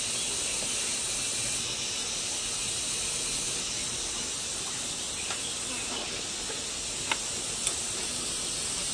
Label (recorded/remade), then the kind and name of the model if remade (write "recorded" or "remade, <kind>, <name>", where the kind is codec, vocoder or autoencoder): recorded